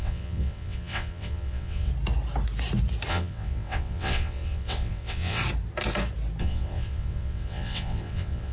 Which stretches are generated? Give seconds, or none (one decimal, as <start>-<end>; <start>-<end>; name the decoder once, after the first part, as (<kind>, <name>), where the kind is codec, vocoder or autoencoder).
0.0-1.9 (vocoder, WaveNeXt); 3.1-5.4; 6.4-8.5